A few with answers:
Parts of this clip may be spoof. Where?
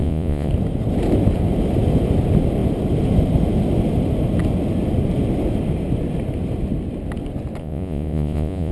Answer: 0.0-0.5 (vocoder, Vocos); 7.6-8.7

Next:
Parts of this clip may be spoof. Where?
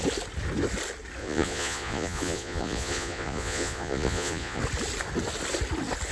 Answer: 1.2-4.6 (vocoder, Vocos)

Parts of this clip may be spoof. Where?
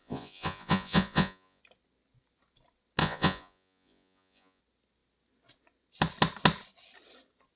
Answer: 0.0-1.6 (vocoder, Vocos); 3.0-4.6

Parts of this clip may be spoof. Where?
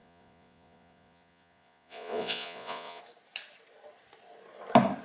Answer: 0.0-3.0 (vocoder, Vocos)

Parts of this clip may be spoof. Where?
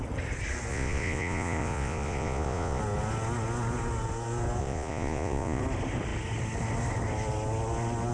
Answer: 0.7-2.8 (vocoder, Vocos); 4.6-5.6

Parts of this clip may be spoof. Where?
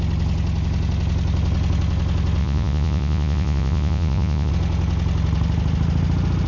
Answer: 2.4-4.5 (vocoder, Vocos)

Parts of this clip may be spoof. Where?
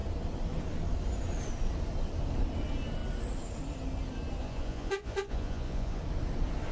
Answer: 4.4-6.0 (vocoder, Vocos)